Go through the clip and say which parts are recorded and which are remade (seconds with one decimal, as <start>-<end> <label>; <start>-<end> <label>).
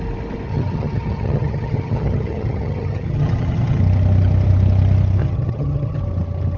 0.0-0.5 recorded; 0.5-3.8 remade; 3.8-5.2 recorded; 5.2-6.0 remade; 6.0-6.6 recorded